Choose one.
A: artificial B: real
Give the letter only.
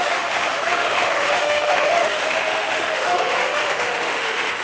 A